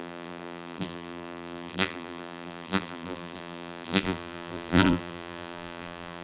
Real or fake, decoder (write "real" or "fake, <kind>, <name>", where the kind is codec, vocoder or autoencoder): fake, vocoder, BigVGAN v2